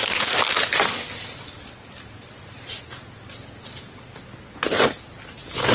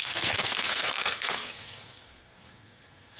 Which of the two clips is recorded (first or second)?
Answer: first